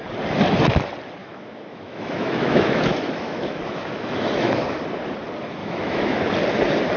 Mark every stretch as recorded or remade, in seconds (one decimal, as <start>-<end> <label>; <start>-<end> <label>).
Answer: 0.0-1.2 recorded; 1.2-4.6 remade; 4.6-5.6 recorded; 5.6-6.2 remade; 6.2-7.0 recorded